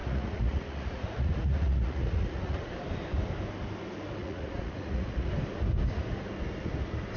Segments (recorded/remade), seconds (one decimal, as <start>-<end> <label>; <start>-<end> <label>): 0.0-2.7 remade; 2.7-4.2 recorded; 4.2-5.3 remade; 5.3-7.2 recorded